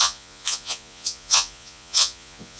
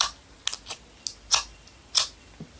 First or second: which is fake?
first